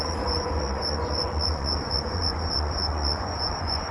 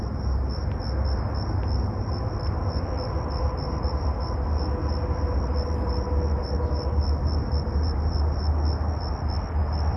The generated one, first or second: first